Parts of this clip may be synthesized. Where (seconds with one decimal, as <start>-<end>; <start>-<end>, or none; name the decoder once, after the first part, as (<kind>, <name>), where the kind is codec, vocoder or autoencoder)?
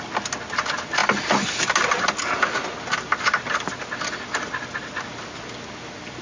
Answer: none